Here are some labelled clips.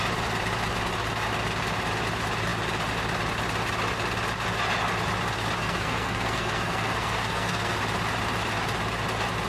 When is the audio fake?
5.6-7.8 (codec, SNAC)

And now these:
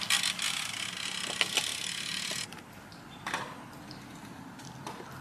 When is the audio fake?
none

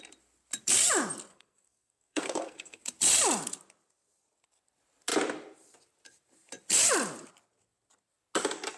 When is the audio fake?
1.3-2.8 (codec, SNAC)

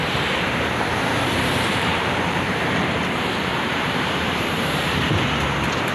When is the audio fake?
0.0-3.0 (vocoder, BigVGAN v2); 3.5-5.0